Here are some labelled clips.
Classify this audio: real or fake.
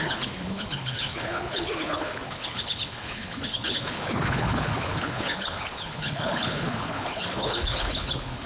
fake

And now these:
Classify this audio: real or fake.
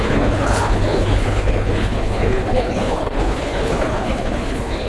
fake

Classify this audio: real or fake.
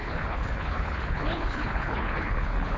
fake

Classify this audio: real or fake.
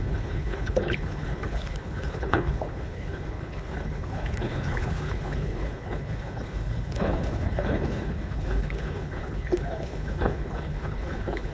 fake